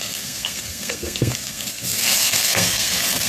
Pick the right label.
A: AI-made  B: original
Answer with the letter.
A